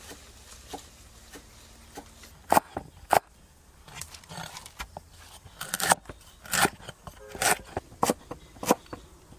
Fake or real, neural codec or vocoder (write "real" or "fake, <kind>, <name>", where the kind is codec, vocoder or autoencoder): real